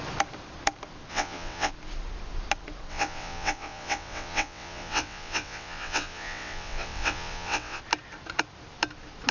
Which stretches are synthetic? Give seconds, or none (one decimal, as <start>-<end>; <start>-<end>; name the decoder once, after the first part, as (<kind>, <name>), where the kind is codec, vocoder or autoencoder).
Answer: 1.1-1.7 (vocoder, WaveNeXt); 2.9-7.8